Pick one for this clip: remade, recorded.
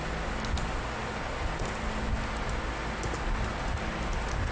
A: recorded